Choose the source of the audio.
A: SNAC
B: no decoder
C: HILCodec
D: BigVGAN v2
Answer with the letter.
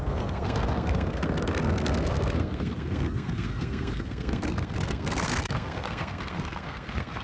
A